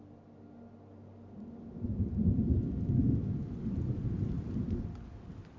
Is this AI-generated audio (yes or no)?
no